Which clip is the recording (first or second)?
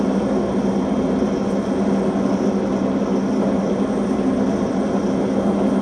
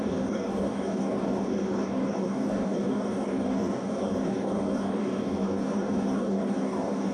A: first